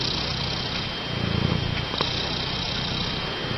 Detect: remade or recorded recorded